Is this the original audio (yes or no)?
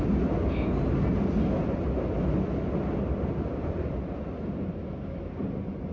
yes